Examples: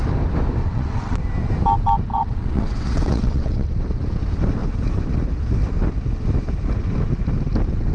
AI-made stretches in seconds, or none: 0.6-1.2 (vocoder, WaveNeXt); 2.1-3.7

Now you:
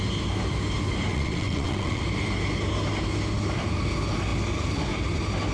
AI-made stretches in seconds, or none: 1.1-2.0 (vocoder, WaveNeXt)

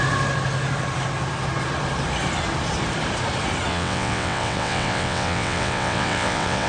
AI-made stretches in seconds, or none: 3.7-6.7 (vocoder, WaveNeXt)

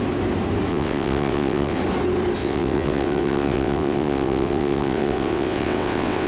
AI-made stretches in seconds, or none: 0.7-1.8 (vocoder, WaveNeXt); 2.4-6.3

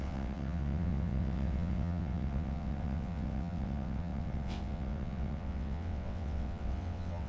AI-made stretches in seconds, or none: 0.0-7.3 (vocoder, WaveNeXt)

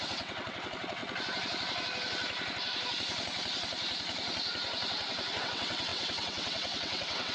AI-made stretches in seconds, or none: 0.0-1.0 (vocoder, WaveNeXt); 5.4-7.3

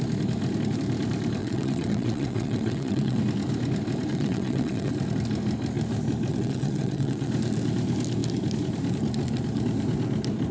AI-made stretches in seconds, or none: 1.4-3.2 (vocoder, WaveNeXt); 4.1-4.9; 6.3-7.3

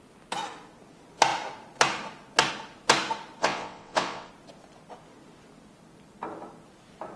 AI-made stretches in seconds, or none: 3.4-4.3 (vocoder, WaveNeXt)